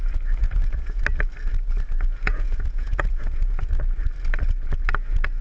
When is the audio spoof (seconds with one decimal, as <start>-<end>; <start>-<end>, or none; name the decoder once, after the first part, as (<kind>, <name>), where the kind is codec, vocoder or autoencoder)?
0.4-1.0 (vocoder, Vocos); 2.2-3.7